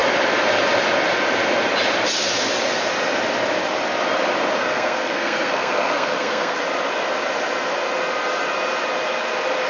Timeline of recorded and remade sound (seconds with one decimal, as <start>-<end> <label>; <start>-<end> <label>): 0.0-4.6 recorded; 4.6-6.6 remade; 6.6-9.7 recorded